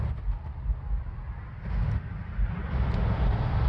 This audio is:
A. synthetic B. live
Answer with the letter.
B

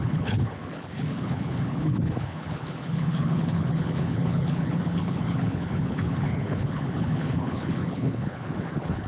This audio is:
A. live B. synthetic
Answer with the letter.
B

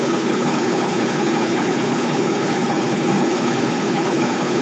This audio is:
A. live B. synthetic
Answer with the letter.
B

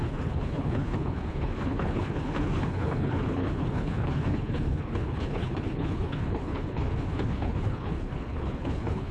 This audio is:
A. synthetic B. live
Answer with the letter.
A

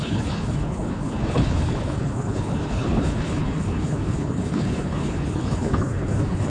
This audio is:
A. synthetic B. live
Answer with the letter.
A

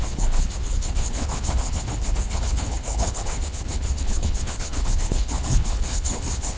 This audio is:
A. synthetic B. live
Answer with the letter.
A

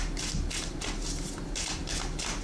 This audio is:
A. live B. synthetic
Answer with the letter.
A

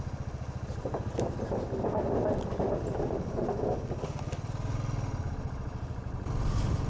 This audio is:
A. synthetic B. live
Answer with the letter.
B